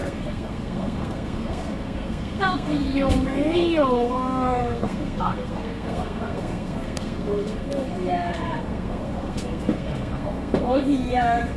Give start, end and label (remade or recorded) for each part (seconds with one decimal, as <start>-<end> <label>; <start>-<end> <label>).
0.0-11.6 remade